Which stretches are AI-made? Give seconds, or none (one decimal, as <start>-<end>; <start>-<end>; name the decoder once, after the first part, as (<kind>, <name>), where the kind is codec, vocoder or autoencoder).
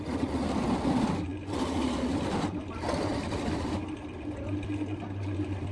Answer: none